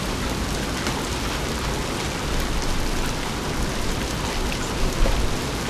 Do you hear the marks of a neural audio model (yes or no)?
no